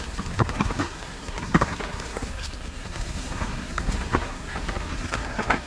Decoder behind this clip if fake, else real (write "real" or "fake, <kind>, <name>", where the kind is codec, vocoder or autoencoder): fake, codec, SNAC